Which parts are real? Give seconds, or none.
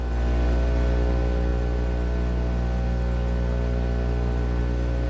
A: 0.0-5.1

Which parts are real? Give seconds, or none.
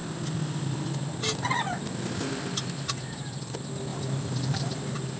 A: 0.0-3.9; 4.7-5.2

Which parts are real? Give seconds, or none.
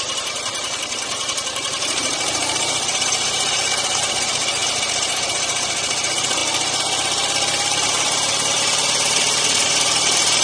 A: 6.4-9.4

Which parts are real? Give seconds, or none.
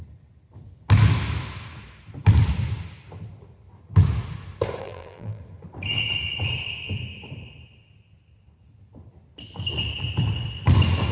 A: 0.0-4.8; 5.4-11.1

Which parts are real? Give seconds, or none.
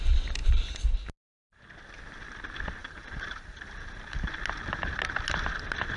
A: 0.0-0.4; 1.6-2.8; 4.3-6.0